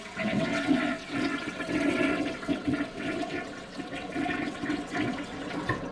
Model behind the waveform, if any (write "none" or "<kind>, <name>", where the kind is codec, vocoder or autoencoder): vocoder, WaveNeXt